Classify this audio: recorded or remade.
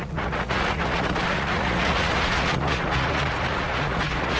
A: remade